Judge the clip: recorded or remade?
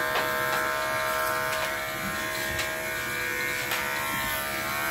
recorded